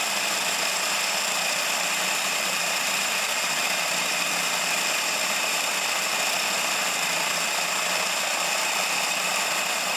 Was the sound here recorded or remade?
remade